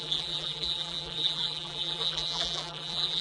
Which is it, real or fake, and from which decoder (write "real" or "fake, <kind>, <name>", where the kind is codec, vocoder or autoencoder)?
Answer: fake, vocoder, BigVGAN v2